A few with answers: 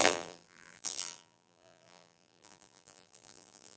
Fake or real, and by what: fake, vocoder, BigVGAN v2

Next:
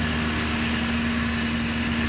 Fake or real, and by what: real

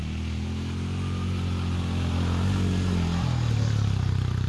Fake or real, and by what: real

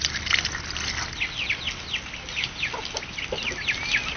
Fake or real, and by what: real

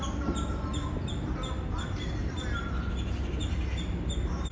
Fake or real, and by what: real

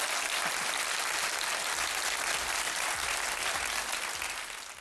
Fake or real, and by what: real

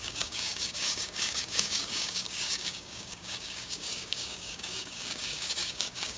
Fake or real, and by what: fake, codec, DAC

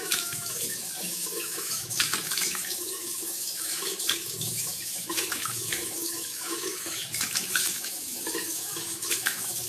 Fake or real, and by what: fake, autoencoder, DAC-VAE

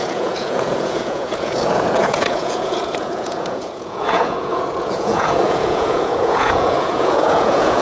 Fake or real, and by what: fake, vocoder, Vocos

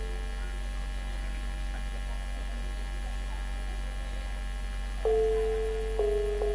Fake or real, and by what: real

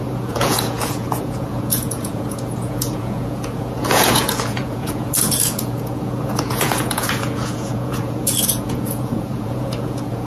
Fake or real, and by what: fake, vocoder, Vocos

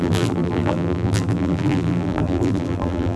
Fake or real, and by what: fake, vocoder, BigVGAN v2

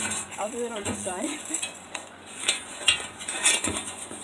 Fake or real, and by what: fake, vocoder, Vocos